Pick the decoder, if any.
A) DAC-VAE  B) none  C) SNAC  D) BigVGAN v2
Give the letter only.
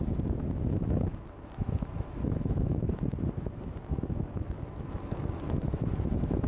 A